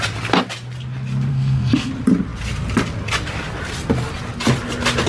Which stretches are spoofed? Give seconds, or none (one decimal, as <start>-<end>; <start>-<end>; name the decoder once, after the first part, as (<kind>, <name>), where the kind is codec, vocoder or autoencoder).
1.3-1.9 (codec, SNAC)